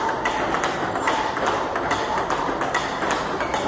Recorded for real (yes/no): yes